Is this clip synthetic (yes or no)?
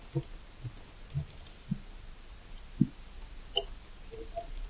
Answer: no